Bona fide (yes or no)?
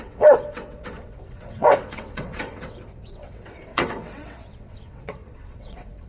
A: no